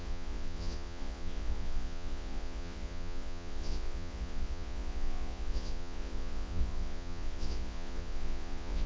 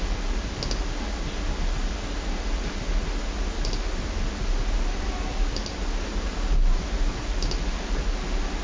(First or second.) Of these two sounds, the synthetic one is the first